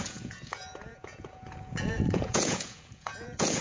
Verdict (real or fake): fake